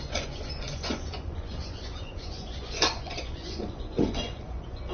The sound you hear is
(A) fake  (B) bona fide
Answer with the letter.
A